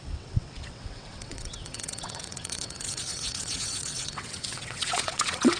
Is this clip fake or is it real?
fake